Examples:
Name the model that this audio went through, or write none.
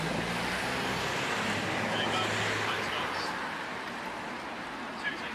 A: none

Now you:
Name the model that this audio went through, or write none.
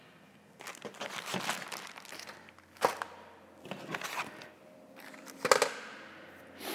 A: none